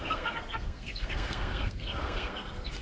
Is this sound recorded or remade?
remade